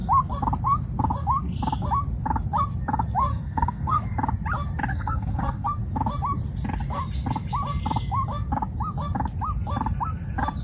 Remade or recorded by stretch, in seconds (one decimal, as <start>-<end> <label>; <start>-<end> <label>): 0.0-3.3 recorded; 3.3-4.0 remade; 4.0-4.9 recorded; 4.9-5.7 remade; 5.7-10.6 recorded